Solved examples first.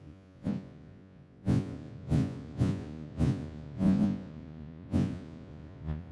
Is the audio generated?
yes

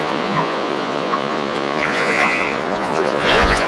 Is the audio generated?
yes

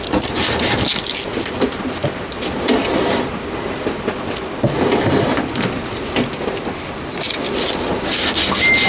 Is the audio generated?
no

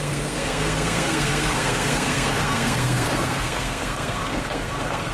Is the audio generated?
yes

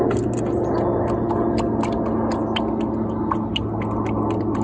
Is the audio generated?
no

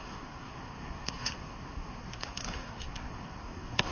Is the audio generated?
yes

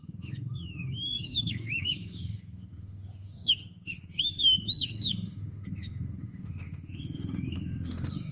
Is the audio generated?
yes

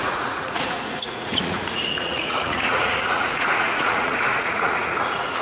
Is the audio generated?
yes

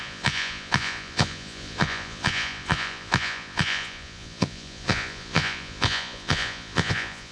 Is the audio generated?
yes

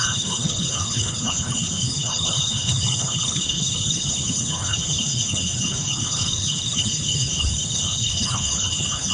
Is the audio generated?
yes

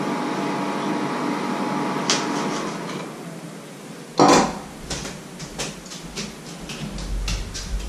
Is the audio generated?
no